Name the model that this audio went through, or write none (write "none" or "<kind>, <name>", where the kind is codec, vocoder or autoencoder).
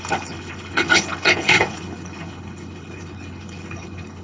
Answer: codec, HILCodec